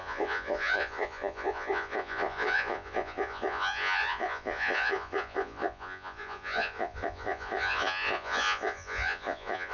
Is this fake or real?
fake